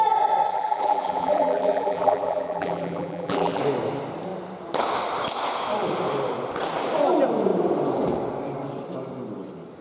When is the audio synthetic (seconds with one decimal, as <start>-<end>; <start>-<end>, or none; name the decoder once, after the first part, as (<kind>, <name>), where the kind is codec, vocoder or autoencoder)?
0.5-3.6 (vocoder, BigVGAN v2)